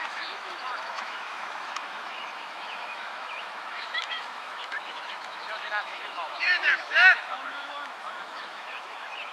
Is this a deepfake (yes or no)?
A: yes